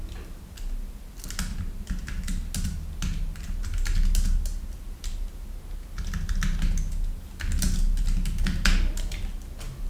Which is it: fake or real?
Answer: real